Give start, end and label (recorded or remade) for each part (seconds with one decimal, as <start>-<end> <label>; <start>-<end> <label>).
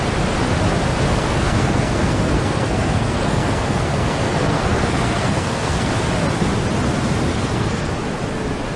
0.0-1.1 recorded; 1.1-5.9 remade; 5.9-7.3 recorded; 7.3-7.9 remade; 7.9-8.8 recorded